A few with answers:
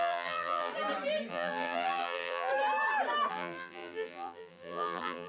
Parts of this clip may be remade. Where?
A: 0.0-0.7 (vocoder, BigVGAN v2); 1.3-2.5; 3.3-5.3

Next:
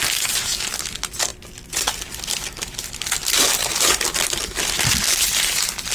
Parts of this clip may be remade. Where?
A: 4.4-5.3 (vocoder, BigVGAN v2)

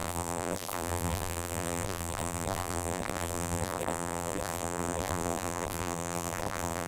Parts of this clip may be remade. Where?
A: 0.0-6.9 (vocoder, BigVGAN v2)

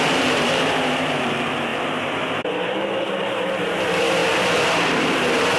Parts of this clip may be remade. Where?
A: 0.0-5.6 (vocoder, BigVGAN v2)